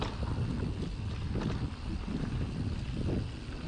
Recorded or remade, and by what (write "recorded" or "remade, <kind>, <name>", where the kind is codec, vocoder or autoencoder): recorded